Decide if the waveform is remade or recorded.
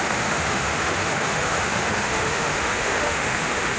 remade